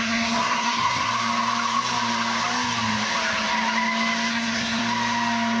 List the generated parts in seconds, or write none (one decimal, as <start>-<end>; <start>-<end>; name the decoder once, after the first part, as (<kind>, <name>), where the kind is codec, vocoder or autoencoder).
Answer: 0.0-1.1 (codec, SNAC); 4.3-4.8